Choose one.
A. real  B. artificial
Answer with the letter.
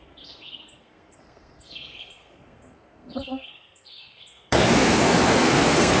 B